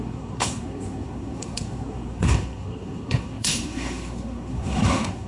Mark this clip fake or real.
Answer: fake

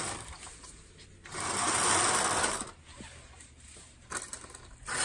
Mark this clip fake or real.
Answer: real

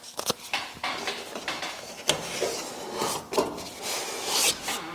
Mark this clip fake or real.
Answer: real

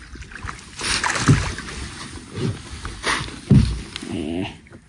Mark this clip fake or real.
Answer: real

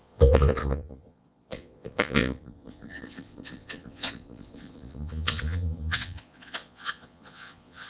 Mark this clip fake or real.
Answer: fake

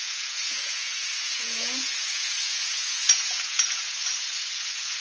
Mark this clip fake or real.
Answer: fake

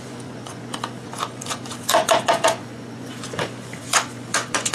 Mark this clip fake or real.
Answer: fake